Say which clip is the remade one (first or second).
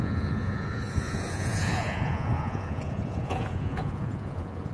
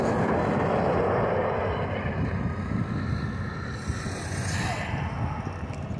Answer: first